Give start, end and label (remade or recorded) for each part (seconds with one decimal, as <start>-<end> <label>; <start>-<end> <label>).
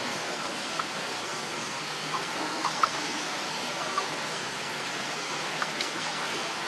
0.0-6.7 remade